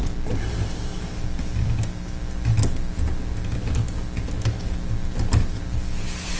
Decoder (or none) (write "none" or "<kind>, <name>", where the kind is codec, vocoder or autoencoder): none